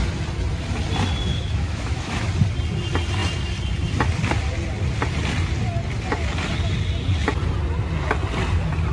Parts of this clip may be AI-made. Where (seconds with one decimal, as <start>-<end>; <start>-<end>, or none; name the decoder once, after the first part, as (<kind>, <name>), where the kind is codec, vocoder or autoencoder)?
1.3-2.3 (autoencoder, DAC-VAE)